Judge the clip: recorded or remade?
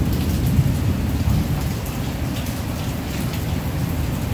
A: recorded